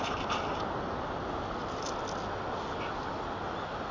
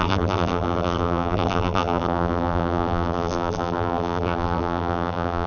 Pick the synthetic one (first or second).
second